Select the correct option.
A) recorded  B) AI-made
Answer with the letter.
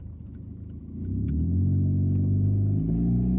A